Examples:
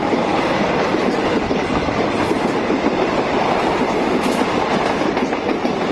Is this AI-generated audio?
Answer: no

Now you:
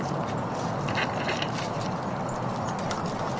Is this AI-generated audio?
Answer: no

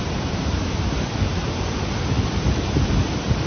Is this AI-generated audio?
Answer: no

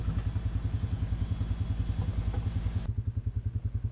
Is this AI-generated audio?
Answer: no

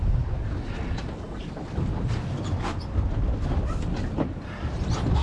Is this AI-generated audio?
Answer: no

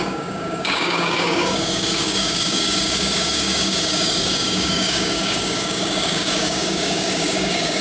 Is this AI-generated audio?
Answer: yes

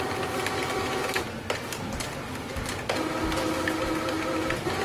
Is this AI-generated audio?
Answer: no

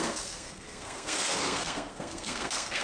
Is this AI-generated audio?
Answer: yes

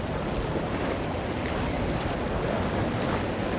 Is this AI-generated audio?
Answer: no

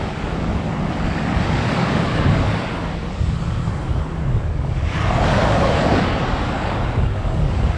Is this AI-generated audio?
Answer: yes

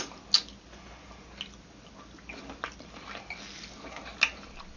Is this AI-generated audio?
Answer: no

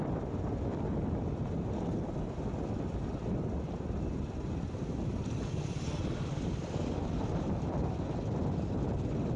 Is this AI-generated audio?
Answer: no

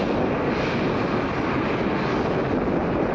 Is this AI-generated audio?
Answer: no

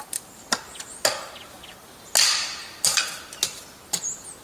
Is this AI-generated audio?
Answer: no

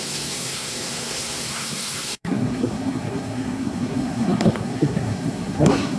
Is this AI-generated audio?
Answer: yes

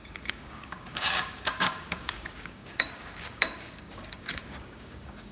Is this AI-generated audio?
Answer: yes